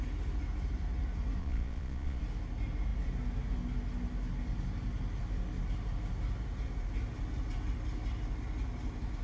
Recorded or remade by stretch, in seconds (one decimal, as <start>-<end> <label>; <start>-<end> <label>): 0.0-1.4 recorded; 1.4-2.2 remade; 2.2-9.2 recorded